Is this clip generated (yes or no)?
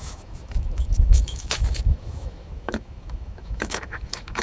yes